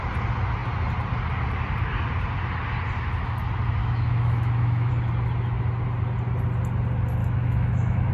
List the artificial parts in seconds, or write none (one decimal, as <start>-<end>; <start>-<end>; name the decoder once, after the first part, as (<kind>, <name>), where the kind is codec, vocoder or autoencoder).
3.8-4.9 (autoencoder, DAC-VAE); 7.2-8.1